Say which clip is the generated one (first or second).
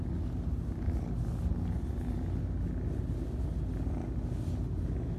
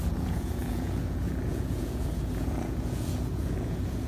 second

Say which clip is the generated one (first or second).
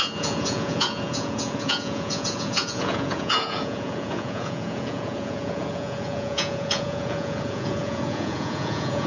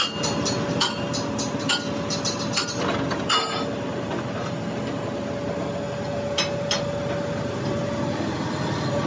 first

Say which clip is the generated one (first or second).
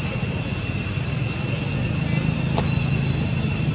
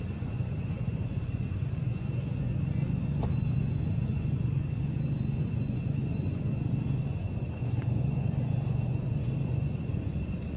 second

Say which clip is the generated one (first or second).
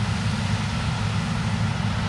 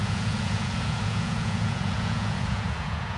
second